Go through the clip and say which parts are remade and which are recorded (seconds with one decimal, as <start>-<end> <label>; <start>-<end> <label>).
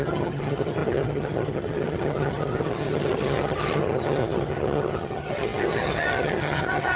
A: 0.0-7.0 remade